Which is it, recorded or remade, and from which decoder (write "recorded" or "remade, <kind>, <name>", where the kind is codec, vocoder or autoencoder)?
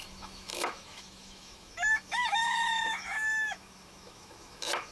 remade, autoencoder, DAC-VAE